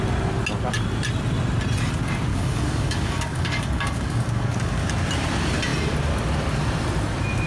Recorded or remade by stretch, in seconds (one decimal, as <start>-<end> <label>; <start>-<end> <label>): 0.0-2.3 recorded; 2.3-4.9 remade; 4.9-7.5 recorded